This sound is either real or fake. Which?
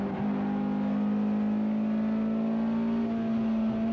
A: real